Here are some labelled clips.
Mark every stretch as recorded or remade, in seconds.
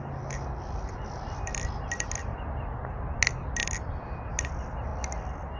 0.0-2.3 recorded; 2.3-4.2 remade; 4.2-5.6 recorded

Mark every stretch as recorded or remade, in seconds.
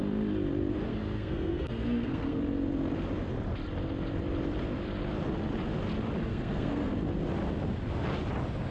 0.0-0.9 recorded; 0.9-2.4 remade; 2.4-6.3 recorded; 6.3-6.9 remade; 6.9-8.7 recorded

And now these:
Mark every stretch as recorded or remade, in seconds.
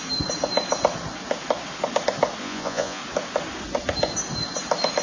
0.0-2.4 recorded; 2.4-3.0 remade; 3.0-5.0 recorded